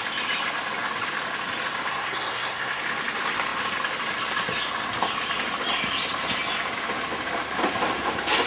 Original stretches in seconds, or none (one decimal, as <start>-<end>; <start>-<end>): 0.0-1.9; 2.8-8.5